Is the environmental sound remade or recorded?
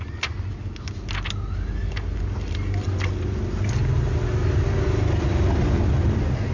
recorded